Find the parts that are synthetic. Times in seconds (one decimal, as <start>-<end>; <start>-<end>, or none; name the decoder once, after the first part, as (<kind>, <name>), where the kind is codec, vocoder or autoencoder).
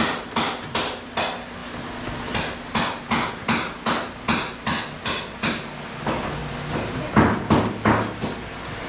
none